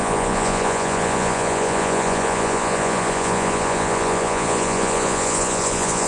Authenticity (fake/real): fake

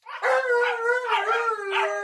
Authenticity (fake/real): real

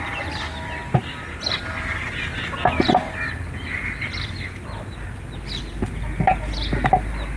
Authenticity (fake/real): real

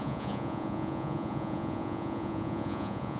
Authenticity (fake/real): fake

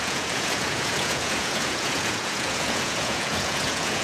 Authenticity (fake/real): fake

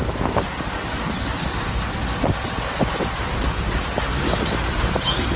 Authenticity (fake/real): real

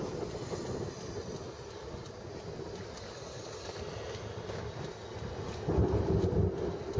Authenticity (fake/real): real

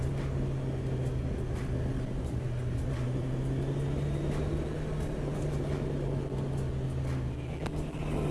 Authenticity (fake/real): real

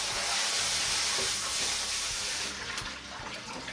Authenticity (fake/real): real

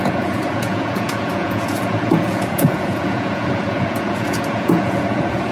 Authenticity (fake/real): fake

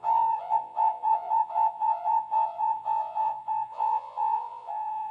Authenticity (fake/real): fake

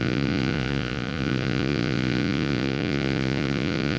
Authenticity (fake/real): fake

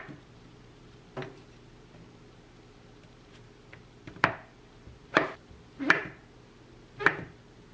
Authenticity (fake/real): real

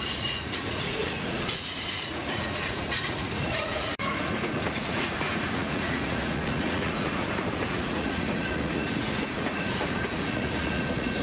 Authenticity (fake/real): fake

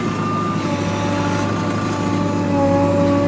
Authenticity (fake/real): real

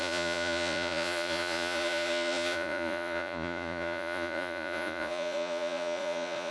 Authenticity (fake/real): fake